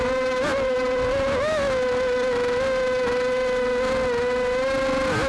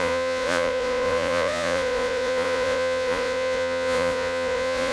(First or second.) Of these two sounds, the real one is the first